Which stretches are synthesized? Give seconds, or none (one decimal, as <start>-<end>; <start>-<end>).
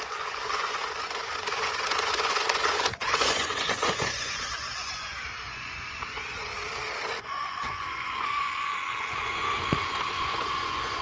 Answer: 0.0-6.5; 7.2-11.0